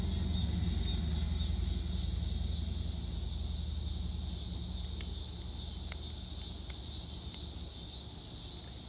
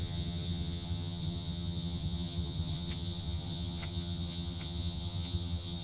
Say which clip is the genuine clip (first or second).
first